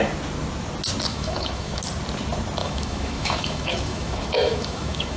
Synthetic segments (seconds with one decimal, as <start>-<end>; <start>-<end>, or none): 1.1-1.8; 2.6-5.2